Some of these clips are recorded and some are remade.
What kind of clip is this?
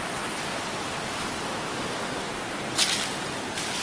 recorded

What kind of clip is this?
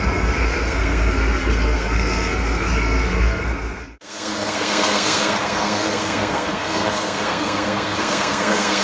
remade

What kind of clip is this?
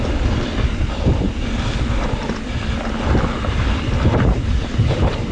recorded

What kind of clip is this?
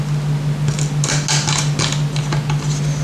recorded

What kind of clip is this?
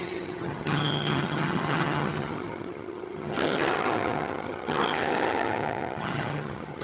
remade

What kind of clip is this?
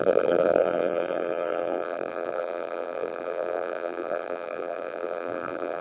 remade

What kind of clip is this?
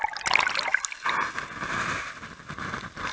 recorded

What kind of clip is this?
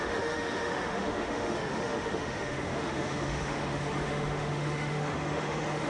remade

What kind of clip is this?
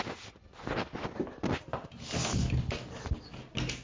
recorded